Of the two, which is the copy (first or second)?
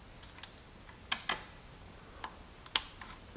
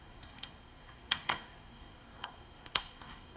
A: second